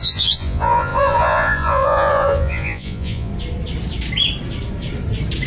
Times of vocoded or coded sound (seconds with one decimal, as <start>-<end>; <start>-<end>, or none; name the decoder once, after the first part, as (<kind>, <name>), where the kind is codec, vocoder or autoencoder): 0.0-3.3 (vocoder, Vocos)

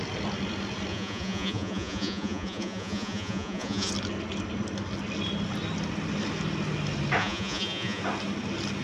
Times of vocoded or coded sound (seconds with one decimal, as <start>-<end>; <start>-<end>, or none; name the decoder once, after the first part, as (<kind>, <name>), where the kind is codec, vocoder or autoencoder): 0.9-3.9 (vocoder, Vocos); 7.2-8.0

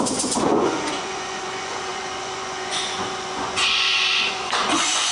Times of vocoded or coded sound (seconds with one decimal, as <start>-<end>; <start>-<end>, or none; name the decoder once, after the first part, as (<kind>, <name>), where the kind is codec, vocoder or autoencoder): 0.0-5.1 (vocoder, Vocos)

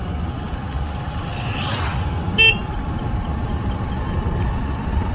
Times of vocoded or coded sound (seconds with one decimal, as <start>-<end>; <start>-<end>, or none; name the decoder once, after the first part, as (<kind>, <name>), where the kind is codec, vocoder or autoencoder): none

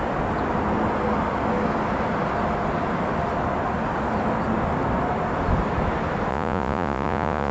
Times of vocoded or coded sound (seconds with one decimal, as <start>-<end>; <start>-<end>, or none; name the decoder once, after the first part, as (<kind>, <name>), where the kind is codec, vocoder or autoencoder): 6.3-7.5 (vocoder, Vocos)

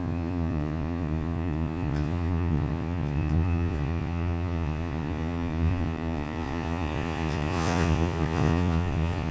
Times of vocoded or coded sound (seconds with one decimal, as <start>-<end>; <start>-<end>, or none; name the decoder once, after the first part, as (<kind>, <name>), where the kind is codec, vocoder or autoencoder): 0.0-9.3 (vocoder, Vocos)